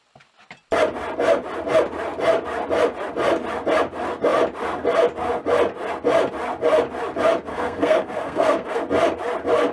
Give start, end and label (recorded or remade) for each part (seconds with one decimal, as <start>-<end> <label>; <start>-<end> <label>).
0.0-7.5 recorded; 7.5-8.8 remade; 8.8-9.7 recorded

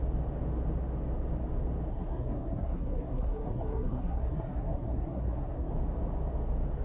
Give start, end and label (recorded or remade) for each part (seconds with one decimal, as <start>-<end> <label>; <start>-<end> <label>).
0.0-1.9 recorded; 1.9-5.7 remade; 5.7-6.8 recorded

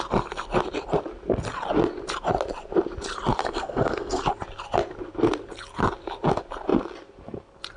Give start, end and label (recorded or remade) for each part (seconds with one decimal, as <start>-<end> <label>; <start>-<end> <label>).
0.0-3.4 recorded; 3.4-4.2 remade; 4.2-7.8 recorded